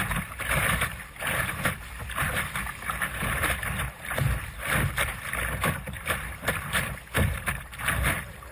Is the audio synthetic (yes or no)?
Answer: yes